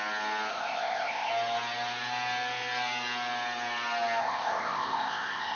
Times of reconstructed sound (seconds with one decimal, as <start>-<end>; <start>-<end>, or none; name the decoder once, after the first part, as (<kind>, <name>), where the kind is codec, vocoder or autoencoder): 0.5-1.3 (codec, ZipCodec); 4.2-5.6